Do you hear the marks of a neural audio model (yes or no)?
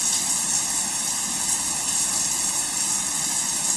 no